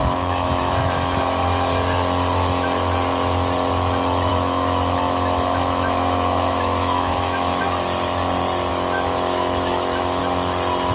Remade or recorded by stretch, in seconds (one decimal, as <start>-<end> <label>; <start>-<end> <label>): 0.0-1.7 remade; 1.7-4.3 recorded; 4.3-7.6 remade; 7.6-8.7 recorded; 8.7-10.2 remade; 10.2-10.9 recorded

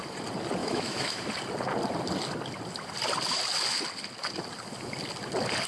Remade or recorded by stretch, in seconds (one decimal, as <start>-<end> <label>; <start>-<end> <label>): 0.0-0.6 recorded; 0.6-1.2 remade; 1.2-5.7 recorded

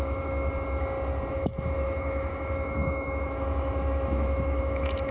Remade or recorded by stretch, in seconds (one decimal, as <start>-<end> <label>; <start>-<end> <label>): 0.0-0.5 remade; 0.5-1.3 recorded; 1.3-5.1 remade

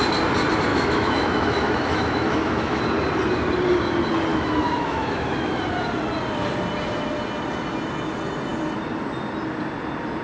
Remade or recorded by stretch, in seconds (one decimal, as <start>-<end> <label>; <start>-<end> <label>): 0.0-0.7 recorded; 0.7-2.8 remade; 2.8-4.3 recorded; 4.3-5.6 remade; 5.6-10.2 recorded

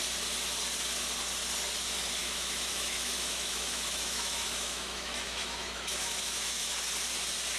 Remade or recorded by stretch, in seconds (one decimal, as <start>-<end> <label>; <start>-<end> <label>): 0.0-2.2 recorded; 2.2-6.7 remade; 6.7-7.6 recorded

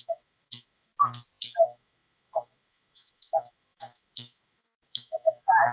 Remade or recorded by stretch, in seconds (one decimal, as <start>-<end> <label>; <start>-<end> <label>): 0.0-0.9 remade; 0.9-1.4 recorded; 1.4-5.7 remade

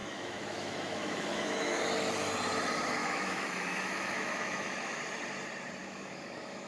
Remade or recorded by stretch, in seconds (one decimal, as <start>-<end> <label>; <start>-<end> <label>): 0.0-1.8 remade; 1.8-3.0 recorded; 3.0-5.0 remade; 5.0-5.8 recorded; 5.8-6.7 remade

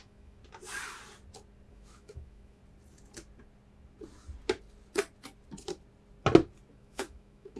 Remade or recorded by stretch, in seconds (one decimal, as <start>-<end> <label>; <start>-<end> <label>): 0.0-0.4 remade; 0.4-1.7 recorded; 1.7-2.6 remade; 2.6-6.7 recorded; 6.7-7.6 remade